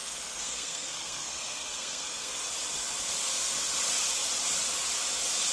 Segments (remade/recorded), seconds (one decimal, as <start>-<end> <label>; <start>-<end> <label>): 0.0-2.3 remade; 2.3-5.5 recorded